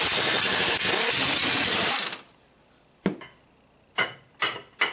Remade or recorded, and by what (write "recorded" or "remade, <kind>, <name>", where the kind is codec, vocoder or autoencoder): recorded